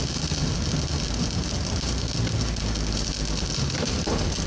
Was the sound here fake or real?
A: real